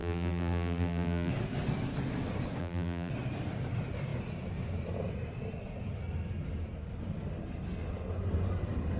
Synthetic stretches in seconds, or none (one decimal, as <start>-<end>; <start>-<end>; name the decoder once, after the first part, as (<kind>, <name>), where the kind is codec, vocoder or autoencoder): 0.0-1.3 (vocoder, BigVGAN v2); 2.6-3.1